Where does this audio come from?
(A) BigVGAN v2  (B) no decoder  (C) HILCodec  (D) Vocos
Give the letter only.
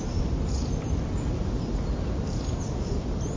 B